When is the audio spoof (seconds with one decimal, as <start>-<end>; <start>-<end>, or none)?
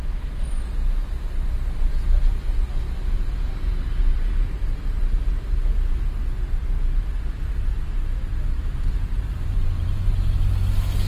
8.6-10.5